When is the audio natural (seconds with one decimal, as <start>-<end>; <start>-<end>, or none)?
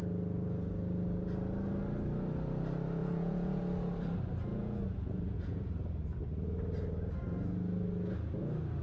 0.0-3.0; 3.6-4.5; 5.7-8.8